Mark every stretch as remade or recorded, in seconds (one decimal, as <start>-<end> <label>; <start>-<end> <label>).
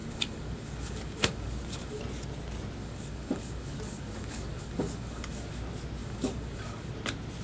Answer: 0.0-2.0 remade; 2.0-2.8 recorded; 2.8-5.6 remade; 5.6-6.0 recorded; 6.0-6.9 remade; 6.9-7.4 recorded